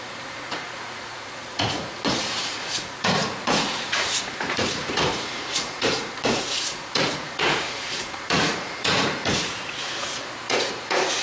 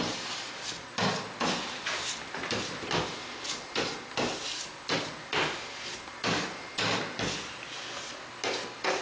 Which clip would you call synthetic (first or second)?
first